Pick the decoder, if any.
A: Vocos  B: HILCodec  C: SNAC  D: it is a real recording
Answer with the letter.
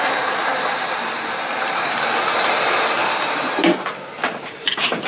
D